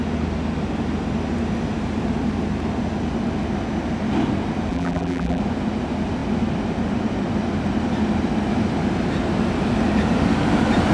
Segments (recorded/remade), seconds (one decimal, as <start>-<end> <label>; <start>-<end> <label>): 0.0-4.7 recorded; 4.7-5.4 remade; 5.4-10.9 recorded